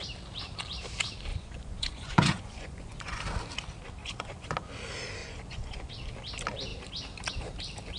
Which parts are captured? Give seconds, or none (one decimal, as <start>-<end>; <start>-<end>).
0.0-1.3; 3.2-4.0; 4.7-5.2; 5.9-8.0